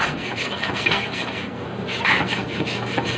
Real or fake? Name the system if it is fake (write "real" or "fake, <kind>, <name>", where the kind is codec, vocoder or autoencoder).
fake, codec, SNAC